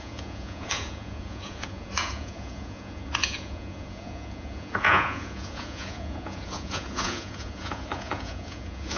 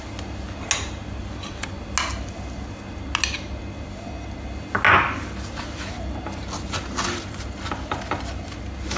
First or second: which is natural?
second